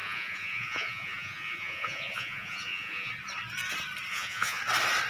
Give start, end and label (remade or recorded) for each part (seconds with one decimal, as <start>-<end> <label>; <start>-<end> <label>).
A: 0.0-3.1 remade; 3.1-4.1 recorded; 4.1-4.6 remade; 4.6-5.1 recorded